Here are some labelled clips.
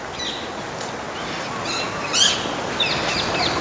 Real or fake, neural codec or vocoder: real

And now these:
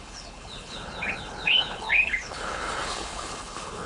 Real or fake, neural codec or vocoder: fake, codec, HILCodec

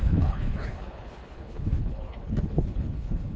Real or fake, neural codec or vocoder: fake, codec, HILCodec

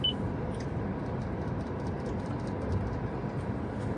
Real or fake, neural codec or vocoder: real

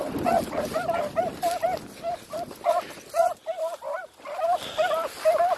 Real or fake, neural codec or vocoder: real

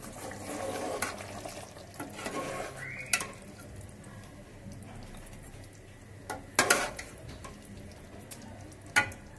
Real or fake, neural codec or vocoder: real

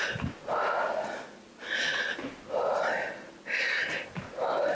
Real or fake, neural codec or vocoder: real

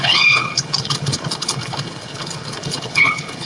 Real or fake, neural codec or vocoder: fake, codec, HILCodec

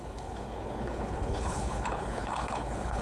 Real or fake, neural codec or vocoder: fake, codec, HILCodec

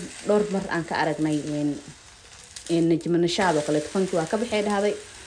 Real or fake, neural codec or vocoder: real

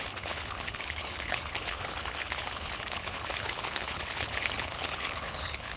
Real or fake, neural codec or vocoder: fake, codec, HILCodec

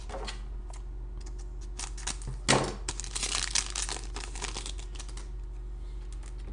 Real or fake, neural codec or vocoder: real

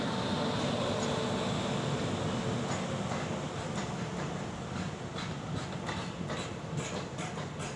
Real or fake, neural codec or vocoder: real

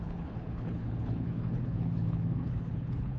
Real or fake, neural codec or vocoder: fake, codec, HILCodec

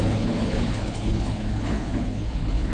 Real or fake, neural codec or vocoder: fake, codec, HILCodec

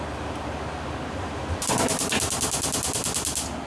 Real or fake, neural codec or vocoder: real